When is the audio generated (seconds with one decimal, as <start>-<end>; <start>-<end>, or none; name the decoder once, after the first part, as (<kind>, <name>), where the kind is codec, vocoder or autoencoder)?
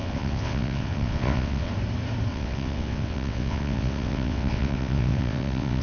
0.0-1.7 (vocoder, WaveNeXt); 2.3-5.8